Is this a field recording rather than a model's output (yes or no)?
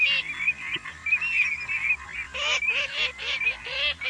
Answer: yes